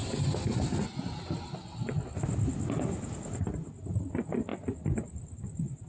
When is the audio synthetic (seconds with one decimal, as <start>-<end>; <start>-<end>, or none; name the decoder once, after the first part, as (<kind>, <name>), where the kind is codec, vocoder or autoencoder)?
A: none